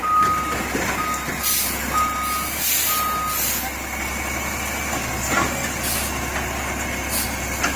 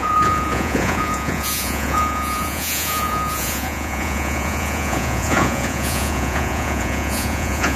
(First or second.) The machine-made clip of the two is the second